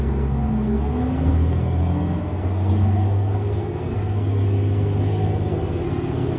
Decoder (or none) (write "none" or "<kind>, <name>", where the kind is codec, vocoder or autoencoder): codec, SNAC